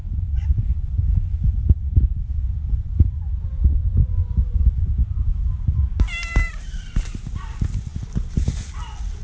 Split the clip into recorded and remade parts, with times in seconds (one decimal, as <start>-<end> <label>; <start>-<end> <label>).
0.0-1.4 remade; 1.4-4.0 recorded; 4.0-4.7 remade; 4.7-9.2 recorded